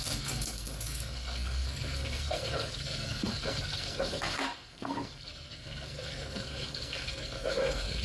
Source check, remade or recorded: remade